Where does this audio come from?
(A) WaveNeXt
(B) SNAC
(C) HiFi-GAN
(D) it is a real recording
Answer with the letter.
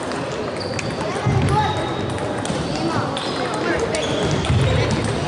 D